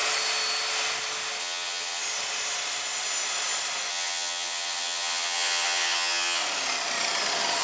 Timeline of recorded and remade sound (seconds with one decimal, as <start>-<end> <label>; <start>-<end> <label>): 0.0-1.4 recorded; 1.4-2.0 remade; 2.0-3.9 recorded; 3.9-6.4 remade; 6.4-7.6 recorded